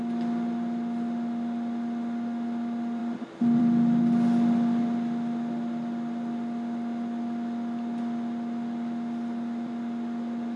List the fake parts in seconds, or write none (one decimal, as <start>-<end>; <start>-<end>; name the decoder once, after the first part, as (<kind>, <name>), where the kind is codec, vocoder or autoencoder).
none